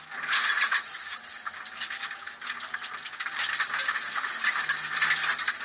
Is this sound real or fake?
real